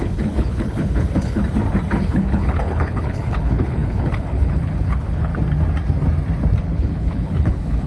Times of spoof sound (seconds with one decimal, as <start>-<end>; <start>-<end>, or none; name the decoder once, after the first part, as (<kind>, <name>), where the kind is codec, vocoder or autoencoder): 0.0-1.4 (codec, HILCodec); 2.0-5.3; 6.6-7.9

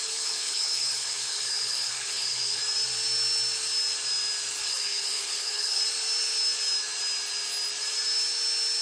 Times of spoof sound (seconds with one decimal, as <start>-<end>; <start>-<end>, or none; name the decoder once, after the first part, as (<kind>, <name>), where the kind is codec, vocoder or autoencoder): 0.0-2.6 (codec, HILCodec); 4.6-5.8

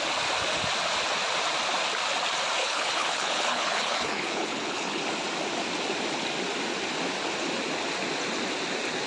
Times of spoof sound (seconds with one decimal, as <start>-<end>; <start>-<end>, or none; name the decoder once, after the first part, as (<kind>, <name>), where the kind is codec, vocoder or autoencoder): 2.6-5.0 (codec, HILCodec)

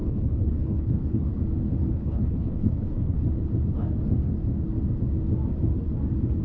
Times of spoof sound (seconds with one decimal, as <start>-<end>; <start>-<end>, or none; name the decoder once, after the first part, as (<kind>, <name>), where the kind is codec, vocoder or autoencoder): 0.0-1.3 (codec, HILCodec); 1.8-3.3

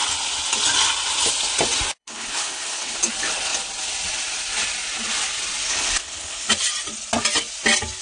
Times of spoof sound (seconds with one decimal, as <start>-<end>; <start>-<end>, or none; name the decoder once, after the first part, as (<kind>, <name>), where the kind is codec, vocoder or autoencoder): 2.0-3.0 (codec, HILCodec); 5.7-6.5

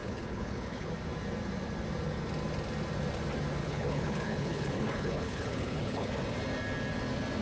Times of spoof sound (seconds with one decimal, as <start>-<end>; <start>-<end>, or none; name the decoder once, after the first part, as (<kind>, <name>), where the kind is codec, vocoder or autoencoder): 0.0-0.9 (codec, HILCodec); 3.6-6.1